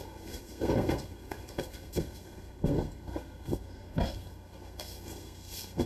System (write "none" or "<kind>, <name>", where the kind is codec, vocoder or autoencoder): codec, SNAC